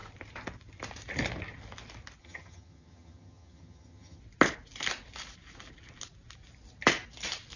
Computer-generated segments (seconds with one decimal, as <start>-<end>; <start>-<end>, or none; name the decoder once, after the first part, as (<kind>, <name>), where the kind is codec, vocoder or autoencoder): 2.2-4.2 (vocoder, HiFi-GAN)